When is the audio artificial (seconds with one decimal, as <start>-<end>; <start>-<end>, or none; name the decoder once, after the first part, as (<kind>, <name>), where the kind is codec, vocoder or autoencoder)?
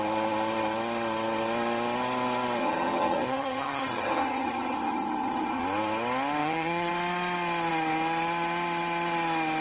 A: 2.6-5.6 (vocoder, HiFi-GAN); 6.4-6.9